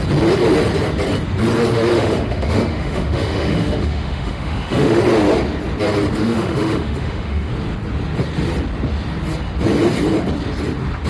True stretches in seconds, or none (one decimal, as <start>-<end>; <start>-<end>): 0.0-1.9; 5.0-6.2; 7.5-11.1